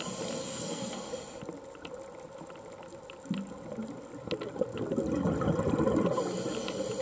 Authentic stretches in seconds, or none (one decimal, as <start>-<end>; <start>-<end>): 0.0-0.4; 1.1-7.0